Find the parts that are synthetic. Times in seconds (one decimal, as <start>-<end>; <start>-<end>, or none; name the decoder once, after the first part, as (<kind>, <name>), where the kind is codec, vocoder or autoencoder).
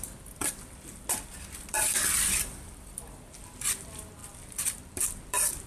0.4-3.4 (vocoder, BigVGAN v2); 4.2-5.7